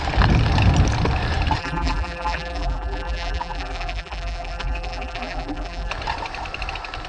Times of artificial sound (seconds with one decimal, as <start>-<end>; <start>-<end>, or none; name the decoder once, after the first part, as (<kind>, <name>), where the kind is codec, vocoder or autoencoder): 1.6-5.9 (vocoder, BigVGAN v2)